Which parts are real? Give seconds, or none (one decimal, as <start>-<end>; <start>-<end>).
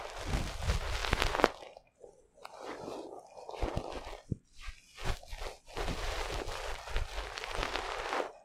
0.0-8.4